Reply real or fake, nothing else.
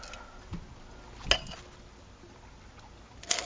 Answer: real